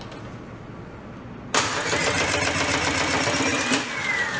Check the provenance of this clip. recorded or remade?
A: recorded